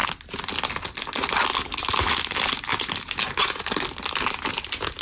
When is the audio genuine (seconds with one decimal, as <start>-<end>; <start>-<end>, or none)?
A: 0.0-5.0